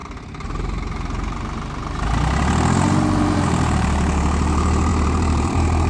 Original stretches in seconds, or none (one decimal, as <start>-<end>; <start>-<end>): 0.0-3.5